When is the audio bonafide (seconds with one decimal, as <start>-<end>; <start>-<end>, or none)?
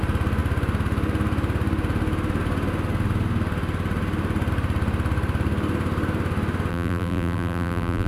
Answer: 0.0-6.7